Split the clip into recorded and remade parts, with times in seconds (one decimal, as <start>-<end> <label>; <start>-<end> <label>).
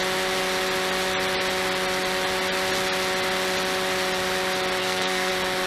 0.0-4.8 recorded; 4.8-5.3 remade; 5.3-5.7 recorded